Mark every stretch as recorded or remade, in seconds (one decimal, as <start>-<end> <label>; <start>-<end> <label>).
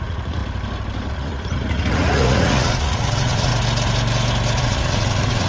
0.0-0.4 remade; 0.4-1.1 recorded; 1.1-3.5 remade; 3.5-4.6 recorded; 4.6-5.5 remade